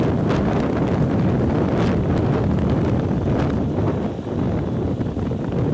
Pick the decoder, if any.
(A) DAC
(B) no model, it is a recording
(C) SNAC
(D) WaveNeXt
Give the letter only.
B